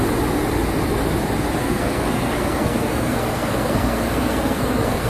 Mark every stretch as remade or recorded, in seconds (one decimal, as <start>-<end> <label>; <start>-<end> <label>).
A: 0.0-1.6 recorded; 1.6-5.1 remade